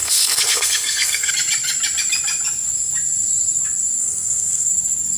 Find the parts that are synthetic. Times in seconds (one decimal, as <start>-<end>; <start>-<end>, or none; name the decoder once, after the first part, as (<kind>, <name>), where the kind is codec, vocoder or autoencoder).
0.0-1.3 (codec, SNAC); 4.0-4.7